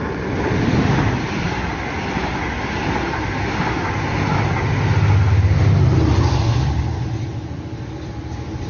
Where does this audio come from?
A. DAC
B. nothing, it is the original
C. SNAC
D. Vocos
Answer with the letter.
B